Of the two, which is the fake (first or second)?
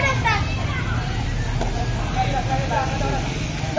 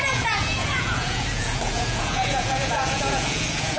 second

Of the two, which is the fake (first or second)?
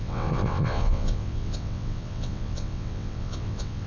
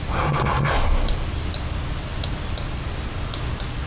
first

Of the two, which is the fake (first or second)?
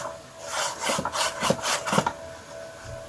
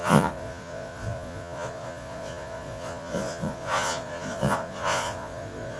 second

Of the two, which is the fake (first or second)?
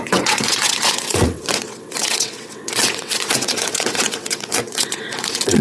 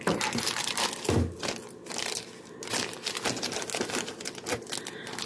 first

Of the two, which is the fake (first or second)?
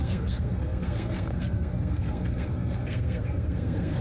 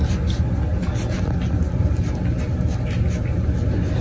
first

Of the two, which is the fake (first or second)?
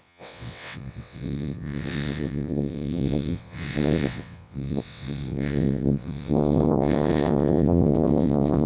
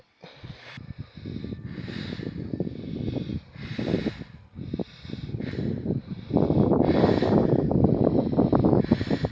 first